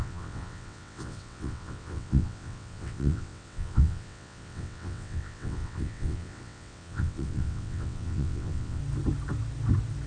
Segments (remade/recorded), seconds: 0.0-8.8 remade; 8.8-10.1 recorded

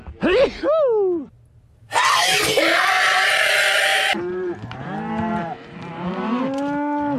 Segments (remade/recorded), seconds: 0.0-1.8 recorded; 1.8-3.3 remade; 3.3-3.9 recorded; 3.9-6.4 remade; 6.4-7.2 recorded

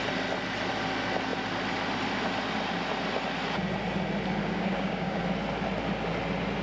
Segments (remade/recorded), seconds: 0.0-4.4 recorded; 4.4-5.2 remade; 5.2-6.6 recorded

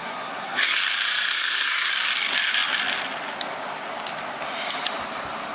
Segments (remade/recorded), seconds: 0.0-0.8 remade; 0.8-1.3 recorded; 1.3-1.9 remade; 1.9-5.5 recorded

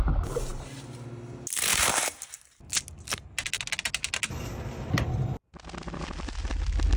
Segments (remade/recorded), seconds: 0.0-1.7 recorded; 1.7-2.4 remade; 2.4-7.0 recorded

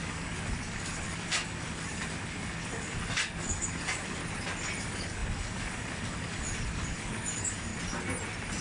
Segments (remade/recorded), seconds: 0.0-4.2 remade; 4.2-4.8 recorded; 4.8-7.7 remade; 7.7-8.6 recorded

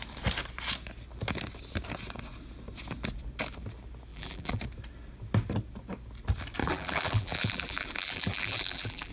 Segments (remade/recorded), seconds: 0.0-4.1 recorded; 4.1-4.6 remade; 4.6-6.6 recorded; 6.6-9.1 remade